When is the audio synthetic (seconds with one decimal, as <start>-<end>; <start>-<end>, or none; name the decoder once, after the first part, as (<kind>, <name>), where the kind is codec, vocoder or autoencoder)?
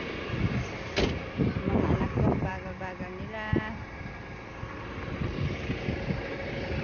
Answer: none